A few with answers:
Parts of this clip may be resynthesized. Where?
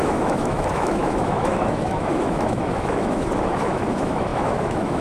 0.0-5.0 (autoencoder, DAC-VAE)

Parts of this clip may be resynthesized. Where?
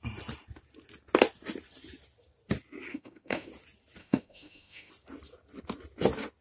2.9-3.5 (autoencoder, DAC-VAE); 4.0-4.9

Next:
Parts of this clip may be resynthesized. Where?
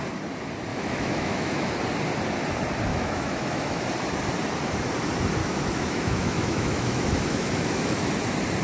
0.7-1.7 (autoencoder, DAC-VAE); 2.9-3.8; 5.4-8.1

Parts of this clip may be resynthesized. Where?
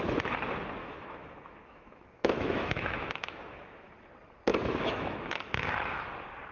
0.8-3.9 (autoencoder, DAC-VAE); 4.5-6.1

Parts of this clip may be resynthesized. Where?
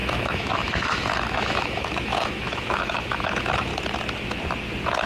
0.0-3.7 (autoencoder, DAC-VAE)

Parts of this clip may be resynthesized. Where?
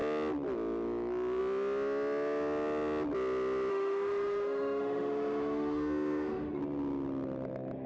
3.7-6.6 (autoencoder, DAC-VAE)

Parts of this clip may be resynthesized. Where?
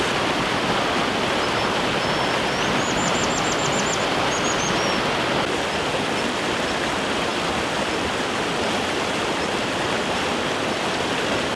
none